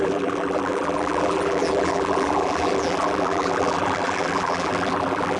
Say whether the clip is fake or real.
fake